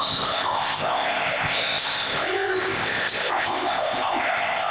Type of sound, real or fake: fake